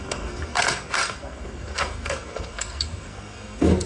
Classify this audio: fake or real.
fake